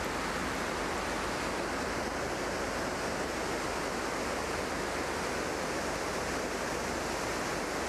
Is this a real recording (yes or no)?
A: yes